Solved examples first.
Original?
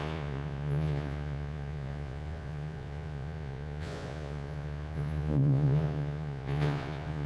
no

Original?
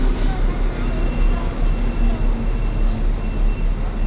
yes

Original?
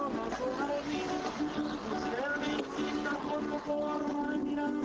yes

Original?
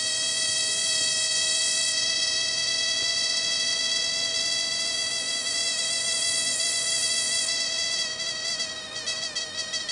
no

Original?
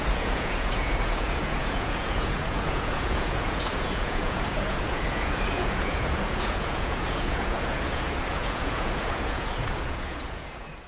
no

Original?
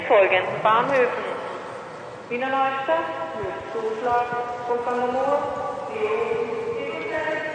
yes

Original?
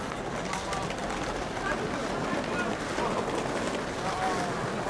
yes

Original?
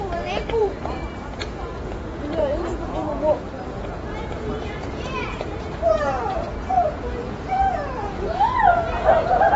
no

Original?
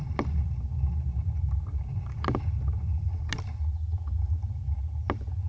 yes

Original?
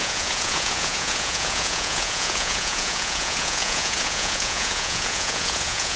no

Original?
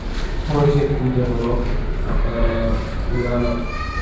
yes